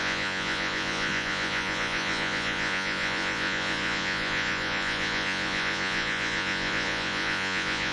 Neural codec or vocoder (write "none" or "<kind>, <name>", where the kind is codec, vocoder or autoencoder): vocoder, Vocos